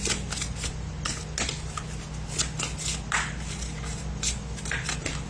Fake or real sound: real